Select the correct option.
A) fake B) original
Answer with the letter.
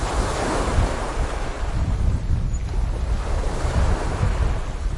B